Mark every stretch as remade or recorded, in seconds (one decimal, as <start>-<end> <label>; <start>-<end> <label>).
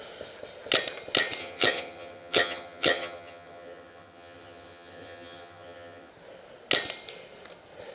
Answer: 0.0-1.4 recorded; 1.4-6.1 remade; 6.1-7.9 recorded